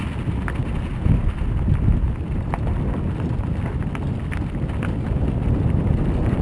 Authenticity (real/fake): real